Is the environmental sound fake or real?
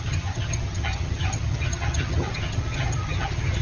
fake